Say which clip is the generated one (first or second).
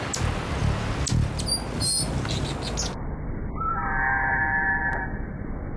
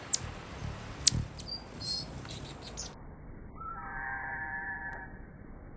second